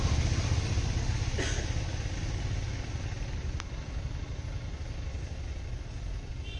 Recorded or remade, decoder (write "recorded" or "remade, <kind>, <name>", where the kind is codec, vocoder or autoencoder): recorded